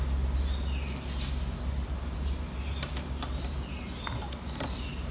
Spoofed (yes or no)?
no